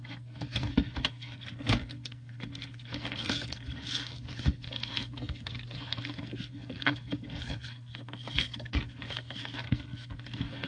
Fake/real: fake